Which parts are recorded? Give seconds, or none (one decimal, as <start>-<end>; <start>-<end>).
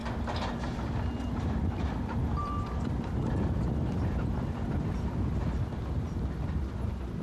none